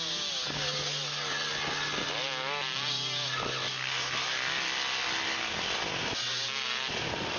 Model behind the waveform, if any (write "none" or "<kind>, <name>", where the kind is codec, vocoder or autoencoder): none